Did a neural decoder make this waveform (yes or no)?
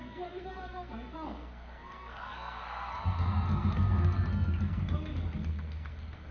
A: yes